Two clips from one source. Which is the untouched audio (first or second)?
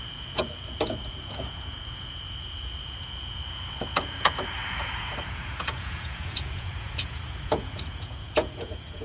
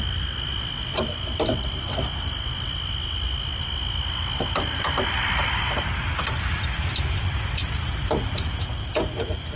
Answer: second